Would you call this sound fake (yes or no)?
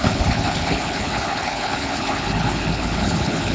yes